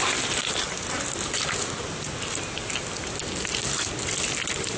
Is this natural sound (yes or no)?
yes